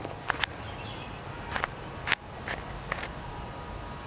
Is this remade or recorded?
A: recorded